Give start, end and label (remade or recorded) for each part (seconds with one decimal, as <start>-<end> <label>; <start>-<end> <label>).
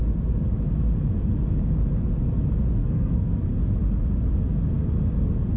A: 0.0-2.8 recorded; 2.8-3.4 remade; 3.4-5.6 recorded